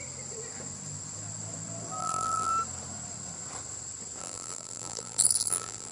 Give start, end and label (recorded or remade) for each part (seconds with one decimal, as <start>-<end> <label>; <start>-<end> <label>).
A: 0.0-2.0 recorded; 2.0-2.5 remade; 2.5-4.2 recorded; 4.2-5.9 remade